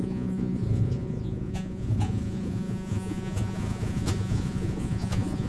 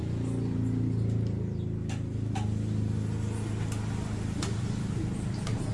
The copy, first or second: first